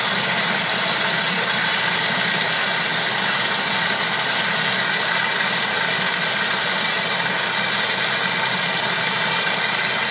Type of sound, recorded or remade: recorded